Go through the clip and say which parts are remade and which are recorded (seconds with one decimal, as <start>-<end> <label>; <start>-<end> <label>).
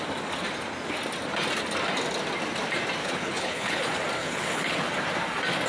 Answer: 0.0-3.0 recorded; 3.0-3.8 remade; 3.8-4.2 recorded; 4.2-4.9 remade; 4.9-5.7 recorded